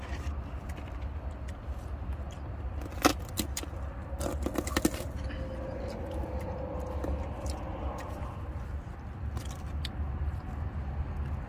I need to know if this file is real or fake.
real